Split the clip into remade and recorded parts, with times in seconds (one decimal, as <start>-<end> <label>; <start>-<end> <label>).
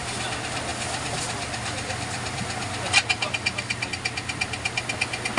0.0-0.7 recorded; 0.7-3.9 remade; 3.9-5.4 recorded